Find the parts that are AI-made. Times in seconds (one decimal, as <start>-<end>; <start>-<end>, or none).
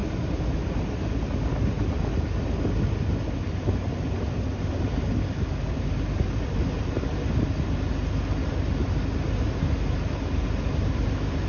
none